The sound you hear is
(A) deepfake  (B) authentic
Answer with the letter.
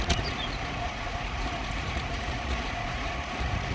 A